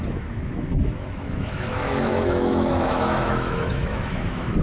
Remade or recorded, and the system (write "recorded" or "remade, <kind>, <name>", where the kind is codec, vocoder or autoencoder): remade, autoencoder, DAC-VAE